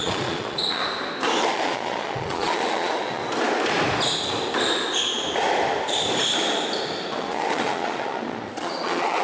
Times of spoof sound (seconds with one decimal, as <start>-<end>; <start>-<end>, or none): 0.0-0.8; 1.5-3.2; 7.1-9.2